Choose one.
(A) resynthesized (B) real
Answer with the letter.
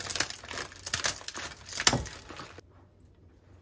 B